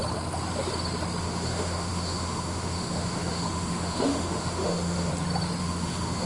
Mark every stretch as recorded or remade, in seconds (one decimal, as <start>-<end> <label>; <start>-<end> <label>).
0.0-1.2 recorded; 1.2-5.1 remade; 5.1-5.6 recorded; 5.6-6.3 remade